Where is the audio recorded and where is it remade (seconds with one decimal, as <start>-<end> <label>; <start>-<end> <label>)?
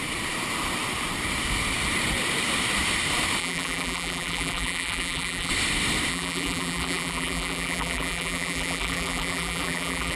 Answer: 0.0-3.4 recorded; 3.4-5.5 remade; 5.5-6.1 recorded; 6.1-10.2 remade